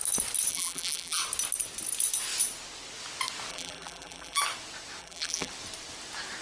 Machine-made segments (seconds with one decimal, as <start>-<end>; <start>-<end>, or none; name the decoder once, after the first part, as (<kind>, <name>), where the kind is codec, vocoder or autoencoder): 0.5-1.2 (vocoder, BigVGAN v2); 3.5-4.4; 5.0-5.5